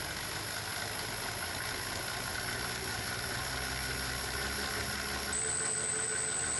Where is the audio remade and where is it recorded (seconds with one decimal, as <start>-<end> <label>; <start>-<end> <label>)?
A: 0.0-6.6 recorded